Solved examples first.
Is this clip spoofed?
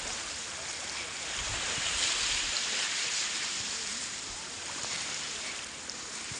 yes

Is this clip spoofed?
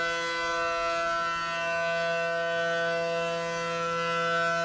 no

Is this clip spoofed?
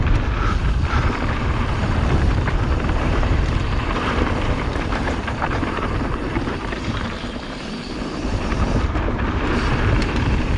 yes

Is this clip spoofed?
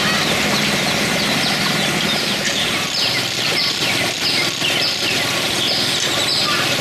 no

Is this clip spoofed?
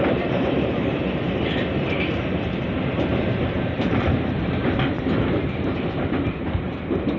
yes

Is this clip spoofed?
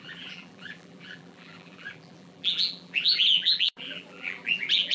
yes